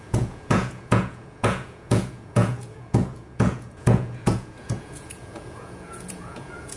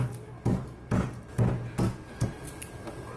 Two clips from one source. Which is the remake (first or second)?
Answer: first